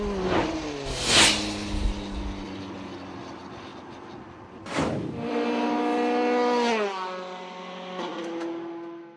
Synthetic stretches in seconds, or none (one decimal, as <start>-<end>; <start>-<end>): none